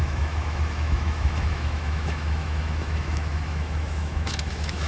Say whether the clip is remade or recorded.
remade